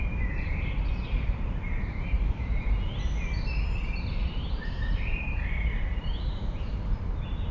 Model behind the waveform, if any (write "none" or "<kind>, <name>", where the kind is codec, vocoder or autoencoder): vocoder, BigVGAN v2